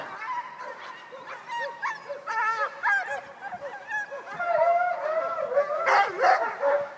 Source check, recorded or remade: recorded